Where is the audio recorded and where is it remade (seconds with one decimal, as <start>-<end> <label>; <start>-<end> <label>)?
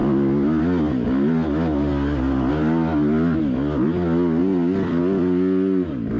0.0-4.4 recorded; 4.4-5.0 remade; 5.0-6.2 recorded